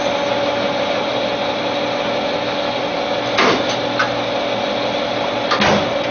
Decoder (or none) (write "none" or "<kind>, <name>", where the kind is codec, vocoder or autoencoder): none